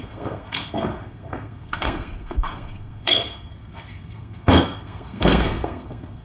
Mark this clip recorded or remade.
remade